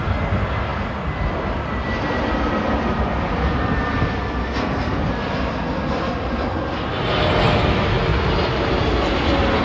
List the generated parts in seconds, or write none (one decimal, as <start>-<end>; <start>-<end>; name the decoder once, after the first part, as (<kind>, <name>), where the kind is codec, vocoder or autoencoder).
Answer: 4.4-5.1 (codec, SNAC)